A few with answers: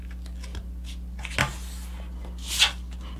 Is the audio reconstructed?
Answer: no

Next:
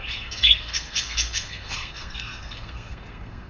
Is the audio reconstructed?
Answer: yes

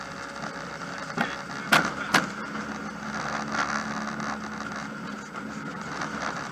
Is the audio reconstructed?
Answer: no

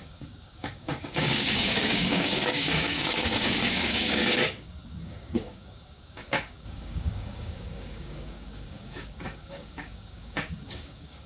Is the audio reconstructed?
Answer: yes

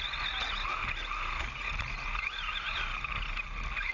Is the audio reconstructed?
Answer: no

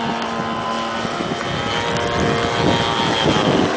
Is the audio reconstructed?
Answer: no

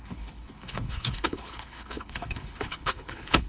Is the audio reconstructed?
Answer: yes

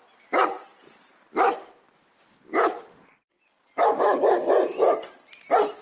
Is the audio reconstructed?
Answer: no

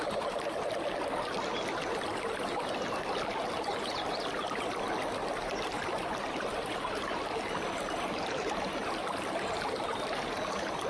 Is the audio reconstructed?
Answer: no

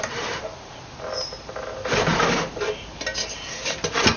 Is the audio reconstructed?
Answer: no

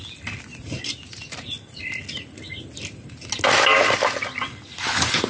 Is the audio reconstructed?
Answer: no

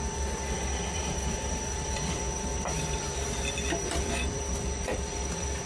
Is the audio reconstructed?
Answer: yes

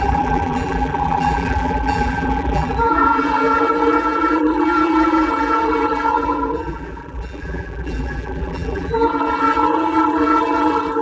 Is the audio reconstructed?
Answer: yes